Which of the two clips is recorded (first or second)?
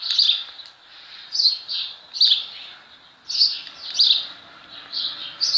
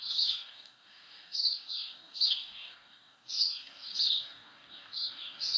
first